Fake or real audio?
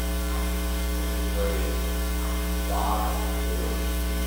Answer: fake